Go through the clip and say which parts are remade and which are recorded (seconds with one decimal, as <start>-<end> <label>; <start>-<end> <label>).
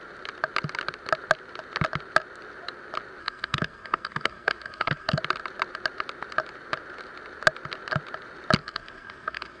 0.0-3.2 recorded; 3.2-5.2 remade; 5.2-8.6 recorded; 8.6-9.6 remade